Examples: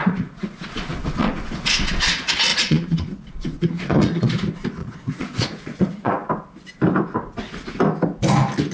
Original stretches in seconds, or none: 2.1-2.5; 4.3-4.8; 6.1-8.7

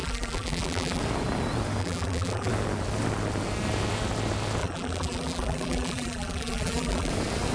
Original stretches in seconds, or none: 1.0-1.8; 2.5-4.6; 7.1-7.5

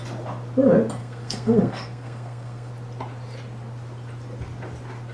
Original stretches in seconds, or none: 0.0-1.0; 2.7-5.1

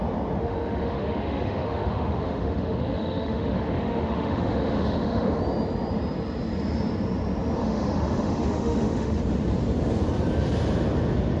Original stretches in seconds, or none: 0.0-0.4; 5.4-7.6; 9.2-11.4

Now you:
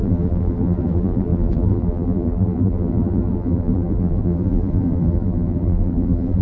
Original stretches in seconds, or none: none